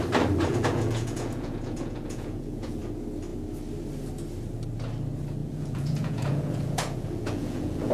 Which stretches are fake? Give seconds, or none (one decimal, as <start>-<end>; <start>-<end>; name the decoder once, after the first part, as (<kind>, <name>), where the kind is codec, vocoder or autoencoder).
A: 0.5-2.8 (vocoder, Vocos); 5.4-7.9